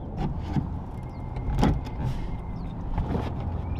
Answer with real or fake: real